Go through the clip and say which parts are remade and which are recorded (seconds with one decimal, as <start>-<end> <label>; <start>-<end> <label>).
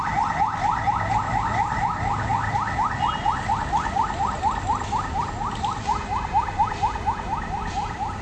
0.0-5.9 recorded; 5.9-6.7 remade; 6.7-8.2 recorded